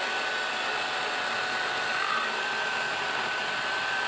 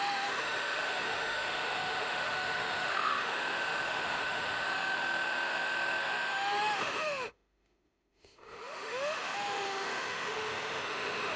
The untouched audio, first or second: first